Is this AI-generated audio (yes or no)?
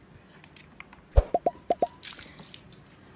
no